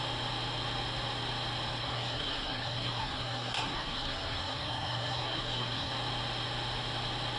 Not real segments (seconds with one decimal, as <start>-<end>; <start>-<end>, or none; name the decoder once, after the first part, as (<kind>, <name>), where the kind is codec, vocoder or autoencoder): 1.8-5.9 (codec, SNAC)